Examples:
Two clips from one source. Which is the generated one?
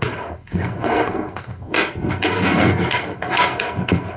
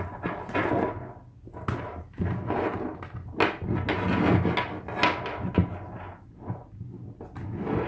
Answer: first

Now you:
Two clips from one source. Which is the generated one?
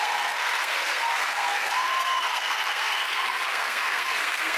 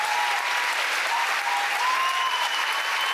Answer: first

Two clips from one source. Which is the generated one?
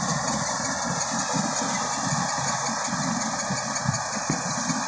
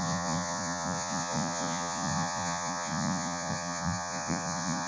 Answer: second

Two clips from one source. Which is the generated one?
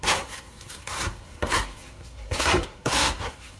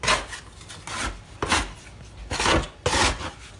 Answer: first